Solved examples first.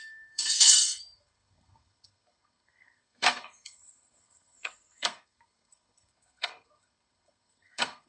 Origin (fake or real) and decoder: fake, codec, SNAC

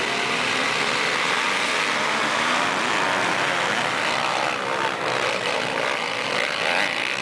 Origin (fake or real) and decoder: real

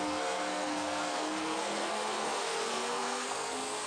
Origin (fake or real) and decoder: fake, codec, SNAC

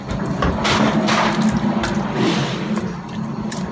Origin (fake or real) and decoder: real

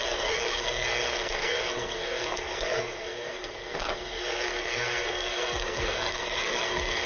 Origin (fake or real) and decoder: fake, codec, SNAC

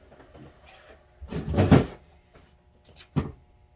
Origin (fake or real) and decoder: real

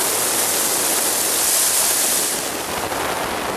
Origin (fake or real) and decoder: real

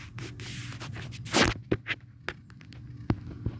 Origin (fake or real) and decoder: real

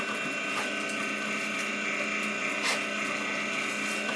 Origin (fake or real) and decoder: real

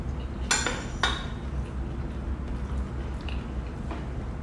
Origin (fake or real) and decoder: real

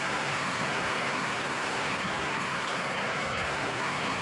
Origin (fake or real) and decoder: fake, codec, SNAC